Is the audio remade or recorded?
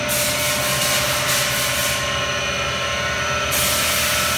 recorded